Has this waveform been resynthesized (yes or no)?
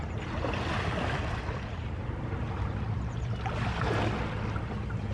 no